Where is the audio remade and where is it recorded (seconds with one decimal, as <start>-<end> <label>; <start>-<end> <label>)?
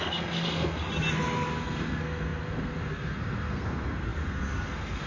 0.0-0.8 remade; 0.8-1.5 recorded; 1.5-5.1 remade